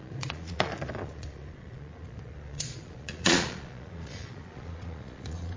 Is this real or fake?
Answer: fake